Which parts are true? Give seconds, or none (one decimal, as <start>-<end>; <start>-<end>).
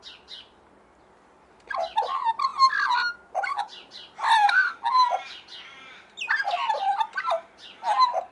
0.0-8.3